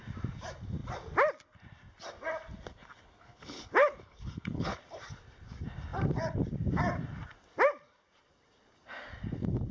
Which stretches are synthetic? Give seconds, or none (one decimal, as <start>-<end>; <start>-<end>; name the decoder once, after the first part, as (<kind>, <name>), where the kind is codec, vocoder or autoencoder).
2.7-4.8 (codec, HILCodec)